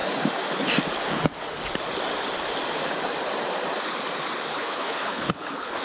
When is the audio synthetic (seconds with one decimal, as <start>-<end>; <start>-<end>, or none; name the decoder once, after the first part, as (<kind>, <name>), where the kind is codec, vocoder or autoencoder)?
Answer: 4.5-5.8 (codec, HILCodec)